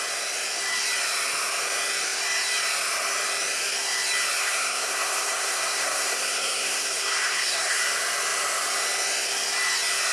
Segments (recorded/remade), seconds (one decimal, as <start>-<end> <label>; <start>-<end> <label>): 0.0-4.4 recorded; 4.4-7.8 remade; 7.8-10.1 recorded